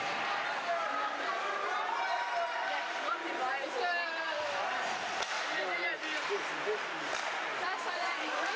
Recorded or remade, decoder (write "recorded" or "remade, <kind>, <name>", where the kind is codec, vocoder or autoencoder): recorded